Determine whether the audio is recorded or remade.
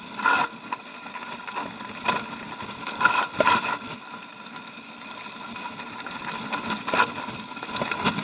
recorded